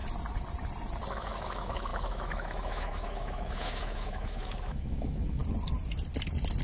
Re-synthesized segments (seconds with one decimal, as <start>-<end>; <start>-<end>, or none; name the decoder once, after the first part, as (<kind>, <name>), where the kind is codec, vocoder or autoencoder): 1.1-5.4 (autoencoder, DAC-VAE)